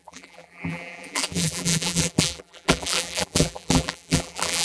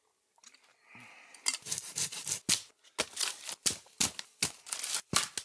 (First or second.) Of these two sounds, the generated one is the first